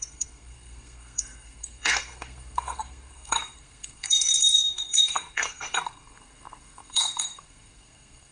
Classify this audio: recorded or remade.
remade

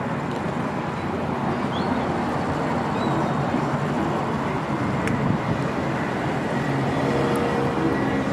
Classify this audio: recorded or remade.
recorded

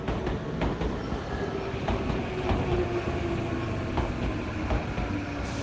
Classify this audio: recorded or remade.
recorded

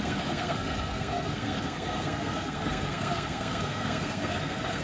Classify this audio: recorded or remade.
remade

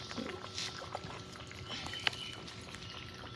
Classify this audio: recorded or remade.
recorded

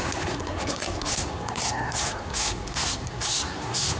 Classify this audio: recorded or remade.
remade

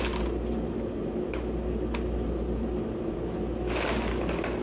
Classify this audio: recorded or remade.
recorded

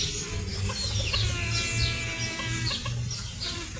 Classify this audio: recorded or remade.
recorded